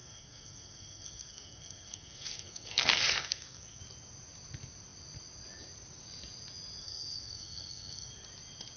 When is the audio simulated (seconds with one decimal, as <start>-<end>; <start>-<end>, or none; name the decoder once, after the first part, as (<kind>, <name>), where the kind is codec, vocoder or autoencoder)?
0.0-3.8 (codec, SNAC); 6.8-8.1